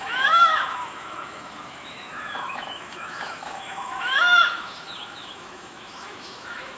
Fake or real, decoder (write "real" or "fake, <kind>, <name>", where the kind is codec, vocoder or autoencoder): fake, autoencoder, DAC-VAE